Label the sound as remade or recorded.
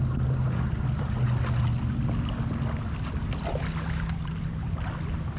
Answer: recorded